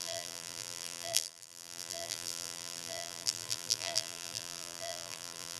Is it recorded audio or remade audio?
remade